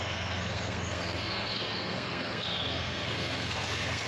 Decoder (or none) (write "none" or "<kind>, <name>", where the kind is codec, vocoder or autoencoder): codec, SNAC